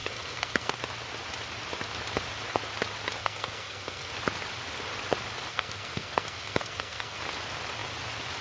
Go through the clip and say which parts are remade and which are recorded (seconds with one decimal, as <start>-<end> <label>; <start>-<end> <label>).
0.0-0.8 remade; 0.8-3.2 recorded; 3.2-4.1 remade; 4.1-5.5 recorded; 5.5-7.2 remade; 7.2-8.4 recorded